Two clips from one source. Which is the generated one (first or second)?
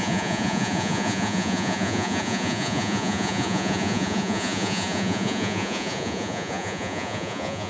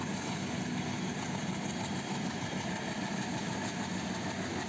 first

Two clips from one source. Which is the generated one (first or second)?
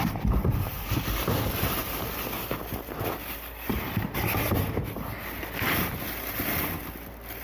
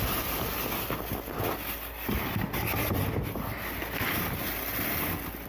first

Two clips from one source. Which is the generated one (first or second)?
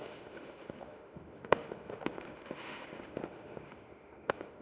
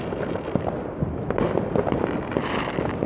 first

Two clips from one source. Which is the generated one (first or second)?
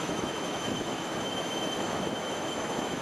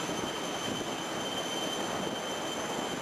first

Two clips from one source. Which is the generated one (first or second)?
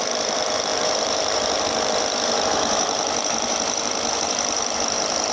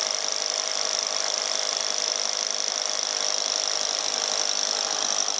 first